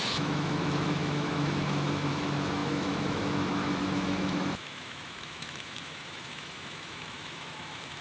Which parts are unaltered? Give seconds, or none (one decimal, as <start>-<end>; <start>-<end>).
none